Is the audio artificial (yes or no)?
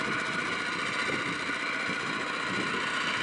no